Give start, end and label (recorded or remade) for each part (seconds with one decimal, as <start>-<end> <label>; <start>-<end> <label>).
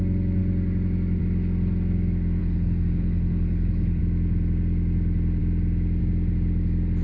0.0-2.4 recorded; 2.4-4.0 remade; 4.0-7.0 recorded